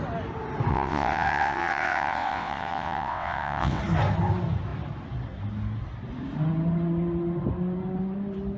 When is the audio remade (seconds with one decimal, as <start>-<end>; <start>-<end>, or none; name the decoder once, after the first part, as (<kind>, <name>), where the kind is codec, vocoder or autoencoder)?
0.7-3.8 (vocoder, WaveNeXt)